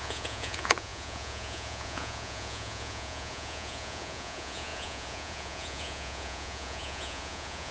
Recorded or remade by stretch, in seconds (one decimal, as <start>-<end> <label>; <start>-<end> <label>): 0.0-7.7 remade